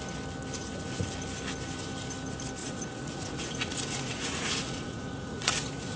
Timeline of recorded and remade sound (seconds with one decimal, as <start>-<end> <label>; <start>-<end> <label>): 0.0-2.6 recorded; 2.6-6.0 remade